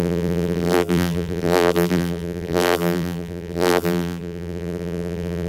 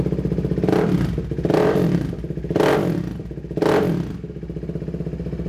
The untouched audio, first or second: second